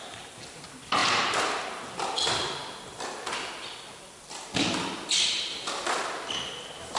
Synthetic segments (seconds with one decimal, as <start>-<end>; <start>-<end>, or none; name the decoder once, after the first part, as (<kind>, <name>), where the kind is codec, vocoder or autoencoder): 0.0-2.6 (vocoder, BigVGAN v2); 6.6-7.0

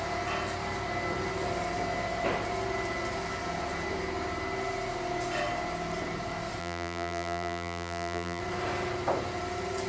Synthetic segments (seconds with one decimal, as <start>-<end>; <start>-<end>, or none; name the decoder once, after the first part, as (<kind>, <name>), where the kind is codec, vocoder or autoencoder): 6.6-8.4 (vocoder, BigVGAN v2)